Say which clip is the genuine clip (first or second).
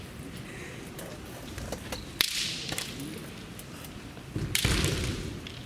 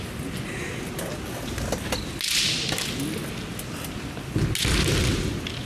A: second